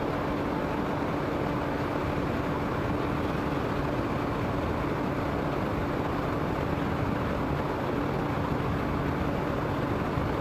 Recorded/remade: recorded